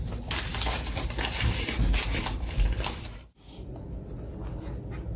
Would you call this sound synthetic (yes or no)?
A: no